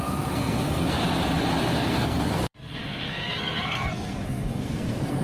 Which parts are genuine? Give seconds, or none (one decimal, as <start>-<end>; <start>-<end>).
1.0-1.6